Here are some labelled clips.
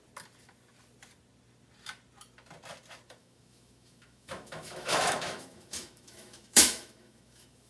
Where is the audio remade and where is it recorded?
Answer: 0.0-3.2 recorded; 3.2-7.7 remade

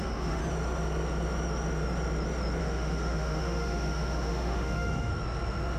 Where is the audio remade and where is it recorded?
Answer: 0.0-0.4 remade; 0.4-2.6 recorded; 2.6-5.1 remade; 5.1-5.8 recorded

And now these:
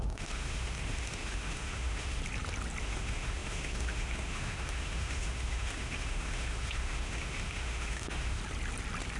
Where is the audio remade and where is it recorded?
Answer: 0.0-2.2 remade; 2.2-2.8 recorded; 2.8-8.4 remade; 8.4-9.2 recorded

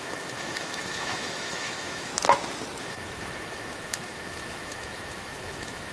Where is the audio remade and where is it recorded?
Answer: 0.0-2.1 remade; 2.1-2.8 recorded; 2.8-5.9 remade